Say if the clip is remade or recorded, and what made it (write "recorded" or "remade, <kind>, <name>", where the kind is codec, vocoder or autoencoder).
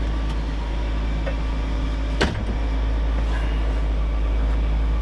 recorded